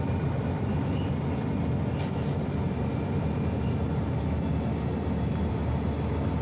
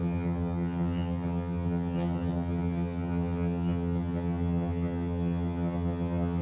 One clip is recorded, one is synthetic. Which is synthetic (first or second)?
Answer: second